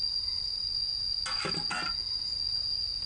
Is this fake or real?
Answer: real